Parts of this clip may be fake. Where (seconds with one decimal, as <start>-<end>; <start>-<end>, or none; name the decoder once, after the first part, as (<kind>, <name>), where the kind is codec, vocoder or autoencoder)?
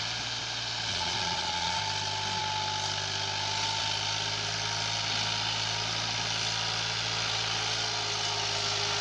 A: 0.9-1.8 (vocoder, Vocos)